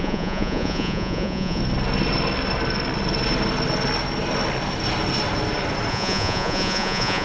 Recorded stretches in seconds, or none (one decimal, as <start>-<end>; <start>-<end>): 1.6-5.9